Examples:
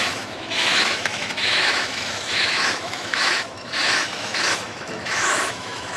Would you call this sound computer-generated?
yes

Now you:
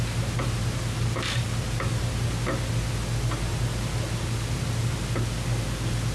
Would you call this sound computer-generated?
no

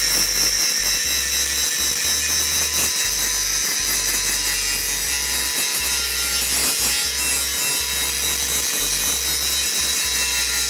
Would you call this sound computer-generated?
no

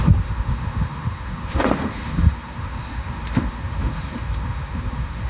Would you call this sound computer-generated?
yes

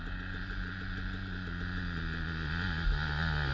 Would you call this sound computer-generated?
no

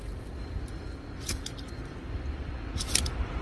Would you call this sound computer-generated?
no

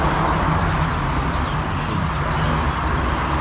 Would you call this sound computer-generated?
no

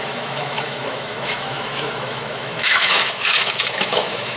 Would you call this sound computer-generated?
yes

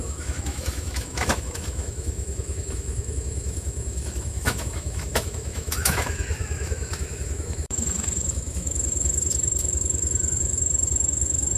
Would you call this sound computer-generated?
yes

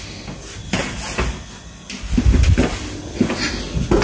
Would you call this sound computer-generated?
no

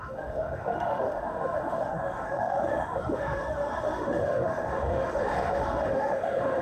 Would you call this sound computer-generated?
yes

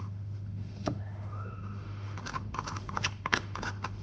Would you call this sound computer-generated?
yes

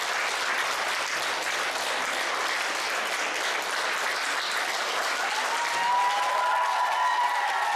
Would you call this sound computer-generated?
no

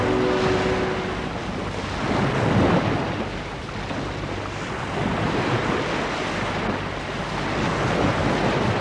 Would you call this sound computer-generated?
no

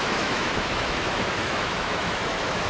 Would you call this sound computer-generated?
yes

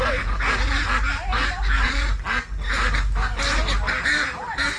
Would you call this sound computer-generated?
no